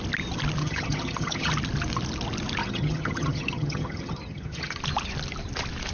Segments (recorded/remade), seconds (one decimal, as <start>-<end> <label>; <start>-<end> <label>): 0.0-0.6 recorded; 0.6-1.5 remade; 1.5-2.6 recorded; 2.6-4.8 remade; 4.8-5.9 recorded